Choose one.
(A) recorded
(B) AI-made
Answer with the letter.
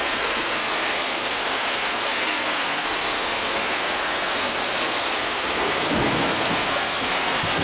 B